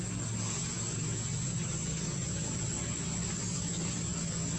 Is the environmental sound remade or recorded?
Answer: recorded